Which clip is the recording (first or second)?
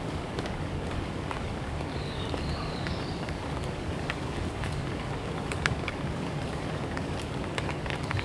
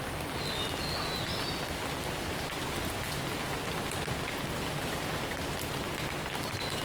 second